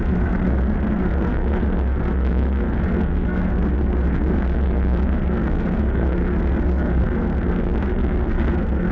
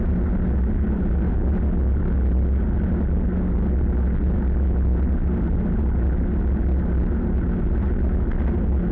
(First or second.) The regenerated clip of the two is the first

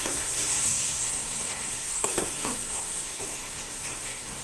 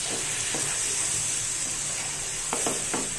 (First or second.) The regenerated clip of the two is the first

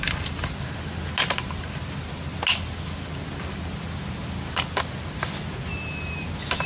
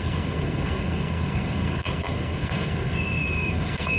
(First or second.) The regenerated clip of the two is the second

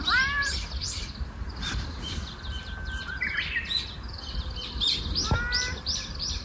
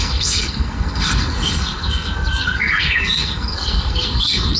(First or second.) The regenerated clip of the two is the second